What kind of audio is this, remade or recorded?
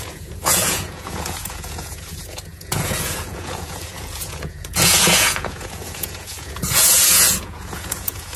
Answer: remade